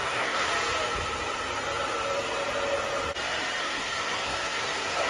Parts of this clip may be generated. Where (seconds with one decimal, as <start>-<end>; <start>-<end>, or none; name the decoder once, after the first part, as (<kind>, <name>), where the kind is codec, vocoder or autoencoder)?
0.0-0.5 (codec, SNAC); 3.6-5.1